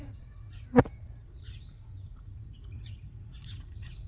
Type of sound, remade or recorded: remade